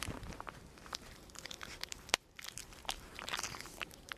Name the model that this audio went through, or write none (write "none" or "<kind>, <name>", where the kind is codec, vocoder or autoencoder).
vocoder, BigVGAN v2